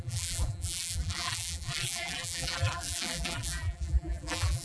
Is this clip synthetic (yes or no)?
yes